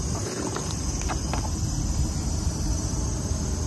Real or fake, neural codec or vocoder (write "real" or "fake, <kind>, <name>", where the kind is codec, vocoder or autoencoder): real